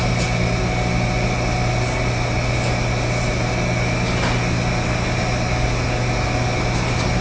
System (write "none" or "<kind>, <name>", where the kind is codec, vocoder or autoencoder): none